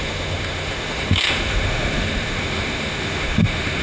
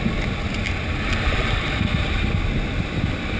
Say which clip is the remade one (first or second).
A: first